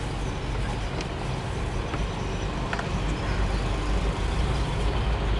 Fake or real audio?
real